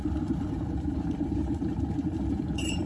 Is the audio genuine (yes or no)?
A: no